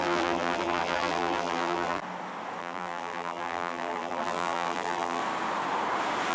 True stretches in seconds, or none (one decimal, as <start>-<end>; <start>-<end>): 2.0-2.6; 5.2-6.3